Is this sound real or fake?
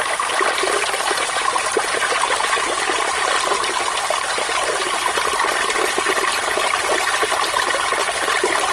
real